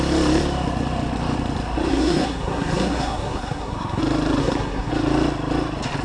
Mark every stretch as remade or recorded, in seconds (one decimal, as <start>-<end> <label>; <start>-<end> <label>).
0.0-1.9 recorded; 1.9-4.0 remade; 4.0-4.4 recorded; 4.4-4.9 remade; 4.9-6.0 recorded

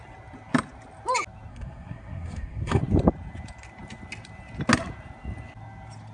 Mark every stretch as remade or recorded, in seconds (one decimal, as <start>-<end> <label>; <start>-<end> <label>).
0.0-1.5 recorded; 1.5-2.8 remade; 2.8-6.1 recorded

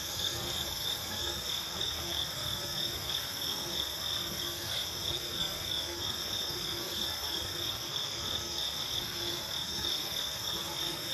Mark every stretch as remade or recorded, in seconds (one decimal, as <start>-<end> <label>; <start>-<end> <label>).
0.0-11.1 remade

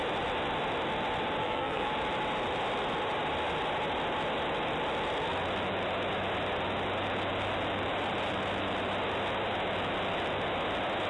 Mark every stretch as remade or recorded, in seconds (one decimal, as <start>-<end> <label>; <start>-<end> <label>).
0.0-1.4 recorded; 1.4-1.9 remade; 1.9-11.1 recorded

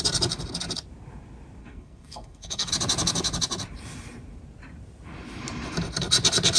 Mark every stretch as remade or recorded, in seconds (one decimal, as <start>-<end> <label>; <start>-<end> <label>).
0.0-1.6 recorded; 1.6-2.7 remade; 2.7-6.6 recorded

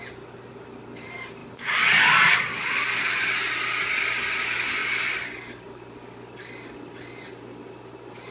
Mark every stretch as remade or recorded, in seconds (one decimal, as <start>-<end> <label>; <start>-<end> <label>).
0.0-8.3 recorded